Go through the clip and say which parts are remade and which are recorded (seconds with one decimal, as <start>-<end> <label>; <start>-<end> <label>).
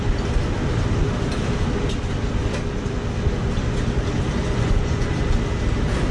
0.0-4.4 recorded; 4.4-5.1 remade; 5.1-6.1 recorded